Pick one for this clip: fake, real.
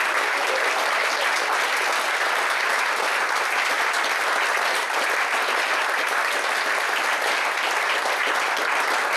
real